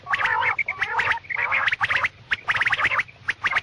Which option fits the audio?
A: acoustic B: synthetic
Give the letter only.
A